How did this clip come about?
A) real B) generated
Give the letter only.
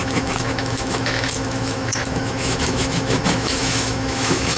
B